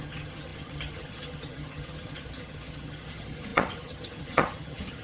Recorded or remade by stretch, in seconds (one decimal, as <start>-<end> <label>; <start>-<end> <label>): 0.0-5.0 remade